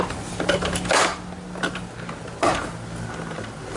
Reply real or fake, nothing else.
real